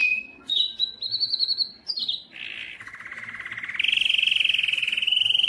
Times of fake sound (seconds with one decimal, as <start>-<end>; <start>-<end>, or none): 0.0-0.6